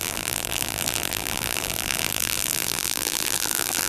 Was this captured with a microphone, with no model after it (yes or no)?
no